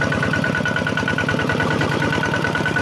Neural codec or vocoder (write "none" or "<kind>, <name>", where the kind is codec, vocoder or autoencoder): vocoder, BigVGAN v2